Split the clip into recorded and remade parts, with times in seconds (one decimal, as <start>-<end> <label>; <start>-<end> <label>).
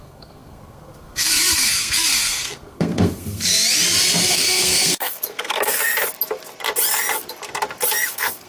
0.0-3.5 remade; 3.5-4.3 recorded; 4.3-5.8 remade; 5.8-8.1 recorded; 8.1-8.5 remade